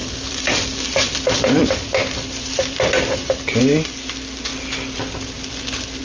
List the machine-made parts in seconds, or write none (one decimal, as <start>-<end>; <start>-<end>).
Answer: 0.0-3.6